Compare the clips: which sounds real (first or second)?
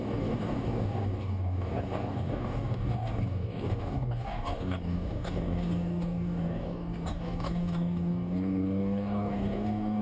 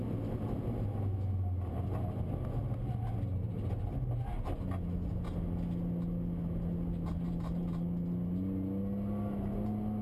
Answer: second